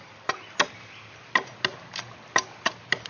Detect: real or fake real